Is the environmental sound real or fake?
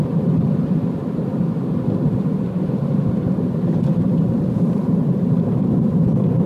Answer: fake